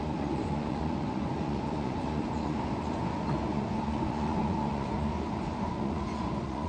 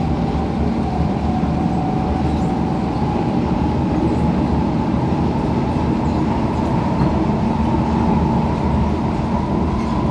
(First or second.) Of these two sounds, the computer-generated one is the first